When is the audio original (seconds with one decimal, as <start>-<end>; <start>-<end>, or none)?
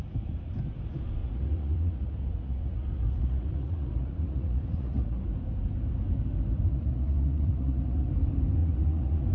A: 0.0-1.2; 5.2-6.7; 8.1-8.6